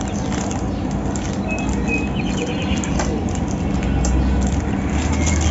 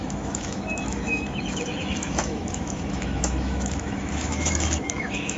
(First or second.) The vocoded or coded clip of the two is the second